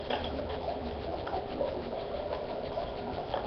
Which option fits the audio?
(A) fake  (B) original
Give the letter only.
A